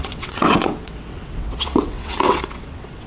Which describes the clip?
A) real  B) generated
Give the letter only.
B